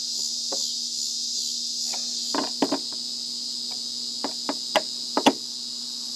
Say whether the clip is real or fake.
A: real